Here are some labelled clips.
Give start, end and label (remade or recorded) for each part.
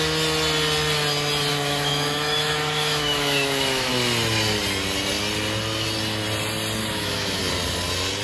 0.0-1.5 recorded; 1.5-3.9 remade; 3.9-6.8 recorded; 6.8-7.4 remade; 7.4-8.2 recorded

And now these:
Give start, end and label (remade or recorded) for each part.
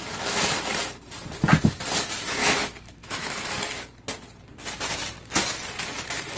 0.0-2.4 recorded; 2.4-3.6 remade; 3.6-6.4 recorded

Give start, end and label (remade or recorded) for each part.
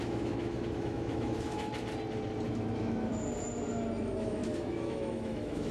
0.0-1.7 remade; 1.7-2.5 recorded; 2.5-3.1 remade; 3.1-4.0 recorded; 4.0-5.7 remade